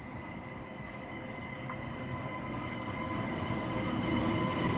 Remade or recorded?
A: remade